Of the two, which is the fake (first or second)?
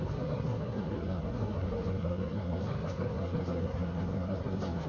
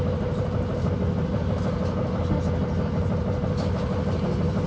first